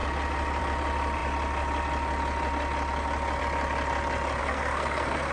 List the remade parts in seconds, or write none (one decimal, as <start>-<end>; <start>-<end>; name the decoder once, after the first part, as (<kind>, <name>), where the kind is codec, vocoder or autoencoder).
4.4-5.3 (codec, SNAC)